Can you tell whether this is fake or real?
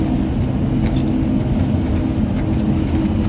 real